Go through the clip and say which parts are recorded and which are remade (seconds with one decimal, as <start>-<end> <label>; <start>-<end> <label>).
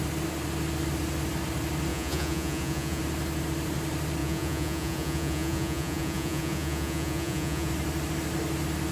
0.0-1.9 recorded; 1.9-3.0 remade; 3.0-4.2 recorded; 4.2-7.7 remade; 7.7-8.9 recorded